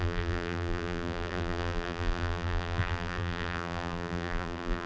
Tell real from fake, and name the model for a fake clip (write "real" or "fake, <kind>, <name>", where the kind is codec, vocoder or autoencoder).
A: fake, vocoder, BigVGAN v2